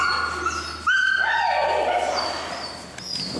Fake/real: real